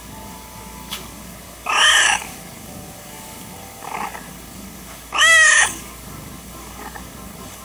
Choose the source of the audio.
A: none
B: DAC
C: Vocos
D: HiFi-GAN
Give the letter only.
B